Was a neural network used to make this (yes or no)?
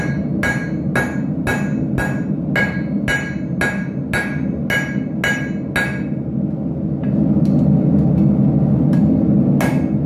no